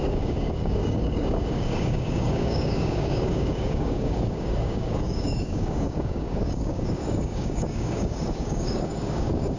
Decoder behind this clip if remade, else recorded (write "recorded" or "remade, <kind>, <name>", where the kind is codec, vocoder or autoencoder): remade, codec, DAC